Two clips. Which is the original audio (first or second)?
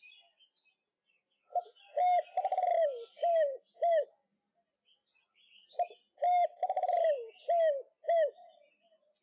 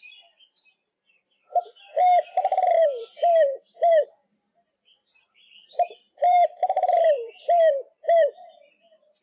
first